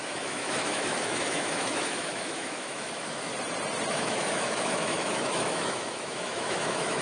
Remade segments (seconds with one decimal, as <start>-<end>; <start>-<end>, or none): 0.0-3.3; 3.9-7.0